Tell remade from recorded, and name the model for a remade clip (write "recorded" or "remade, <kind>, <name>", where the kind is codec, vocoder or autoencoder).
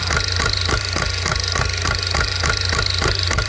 recorded